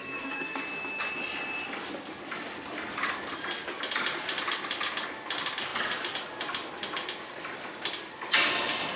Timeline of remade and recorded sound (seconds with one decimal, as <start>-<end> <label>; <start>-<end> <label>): 0.0-0.6 remade; 0.6-9.0 recorded